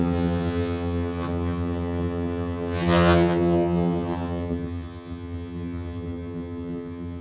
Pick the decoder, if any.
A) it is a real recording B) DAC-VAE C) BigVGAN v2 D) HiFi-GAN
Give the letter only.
D